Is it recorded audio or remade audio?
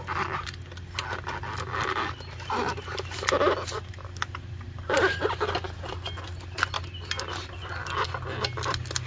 recorded